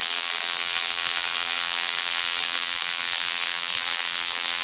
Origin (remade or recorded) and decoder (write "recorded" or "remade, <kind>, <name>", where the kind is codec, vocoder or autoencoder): remade, vocoder, BigVGAN v2